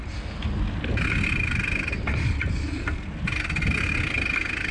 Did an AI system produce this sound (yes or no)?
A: no